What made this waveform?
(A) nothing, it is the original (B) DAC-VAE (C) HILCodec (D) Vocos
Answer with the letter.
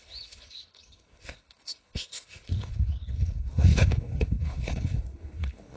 C